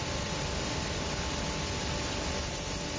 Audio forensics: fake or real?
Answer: real